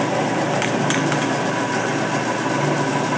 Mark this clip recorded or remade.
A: recorded